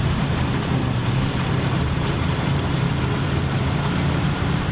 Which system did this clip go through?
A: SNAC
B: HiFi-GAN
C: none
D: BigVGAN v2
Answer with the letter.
D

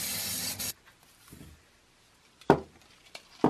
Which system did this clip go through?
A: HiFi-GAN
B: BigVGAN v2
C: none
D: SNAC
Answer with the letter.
B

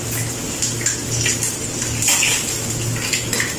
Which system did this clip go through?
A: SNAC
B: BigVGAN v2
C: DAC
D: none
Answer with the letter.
D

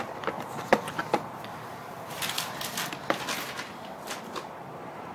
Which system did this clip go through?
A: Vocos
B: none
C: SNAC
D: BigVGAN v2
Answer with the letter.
D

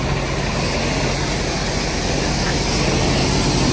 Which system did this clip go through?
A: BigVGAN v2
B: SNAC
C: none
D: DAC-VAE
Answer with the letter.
C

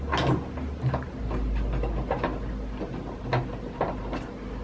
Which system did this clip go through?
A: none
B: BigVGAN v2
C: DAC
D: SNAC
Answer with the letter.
A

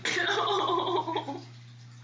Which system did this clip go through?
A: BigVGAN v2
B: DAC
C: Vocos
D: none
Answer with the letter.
D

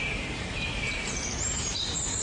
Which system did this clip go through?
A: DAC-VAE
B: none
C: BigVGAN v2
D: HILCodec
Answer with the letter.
C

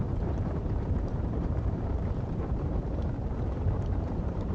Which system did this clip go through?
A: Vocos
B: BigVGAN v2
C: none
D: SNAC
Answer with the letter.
B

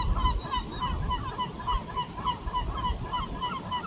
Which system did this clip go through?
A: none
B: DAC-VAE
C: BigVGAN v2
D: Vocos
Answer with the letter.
A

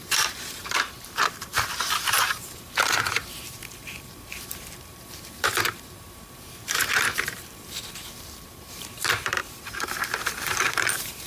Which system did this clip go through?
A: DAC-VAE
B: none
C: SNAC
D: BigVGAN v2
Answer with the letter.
D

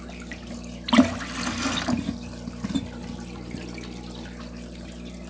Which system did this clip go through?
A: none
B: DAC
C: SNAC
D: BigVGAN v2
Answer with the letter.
A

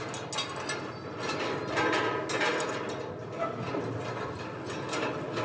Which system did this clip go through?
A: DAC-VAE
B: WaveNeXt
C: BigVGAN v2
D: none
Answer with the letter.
D